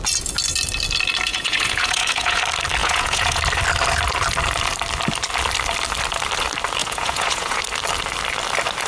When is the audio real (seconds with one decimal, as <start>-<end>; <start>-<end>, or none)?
0.0-1.3; 2.4-2.8; 3.4-6.8; 7.6-8.9